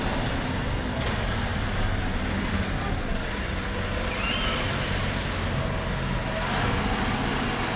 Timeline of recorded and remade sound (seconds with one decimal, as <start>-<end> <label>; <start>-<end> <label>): 0.0-7.8 recorded